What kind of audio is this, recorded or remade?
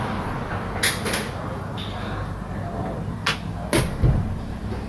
recorded